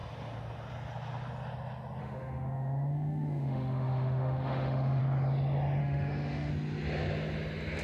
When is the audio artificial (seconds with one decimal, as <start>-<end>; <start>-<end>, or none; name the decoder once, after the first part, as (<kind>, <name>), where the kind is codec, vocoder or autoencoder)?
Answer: 2.0-5.0 (autoencoder, DAC-VAE); 5.8-6.5